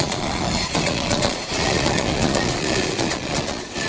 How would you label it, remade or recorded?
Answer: remade